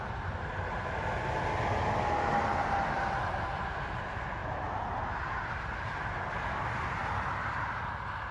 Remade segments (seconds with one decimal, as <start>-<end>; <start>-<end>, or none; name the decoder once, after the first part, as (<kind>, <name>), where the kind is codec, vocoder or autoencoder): none